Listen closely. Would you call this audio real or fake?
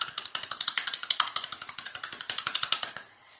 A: fake